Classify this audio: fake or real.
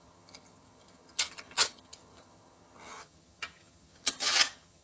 fake